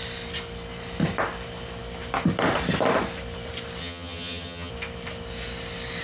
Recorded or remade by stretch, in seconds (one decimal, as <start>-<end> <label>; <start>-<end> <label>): 0.0-3.8 recorded; 3.8-4.7 remade; 4.7-6.0 recorded